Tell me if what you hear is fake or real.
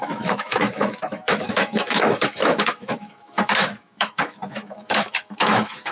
fake